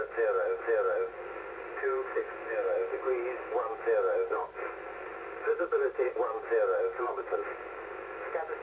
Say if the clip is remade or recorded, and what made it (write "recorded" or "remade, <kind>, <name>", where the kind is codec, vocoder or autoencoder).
recorded